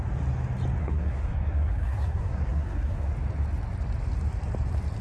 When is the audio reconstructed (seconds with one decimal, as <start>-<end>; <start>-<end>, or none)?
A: 0.8-3.1